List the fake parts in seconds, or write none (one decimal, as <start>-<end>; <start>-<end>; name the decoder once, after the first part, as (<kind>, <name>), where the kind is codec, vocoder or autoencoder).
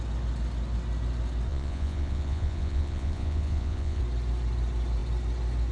1.5-4.0 (vocoder, Vocos)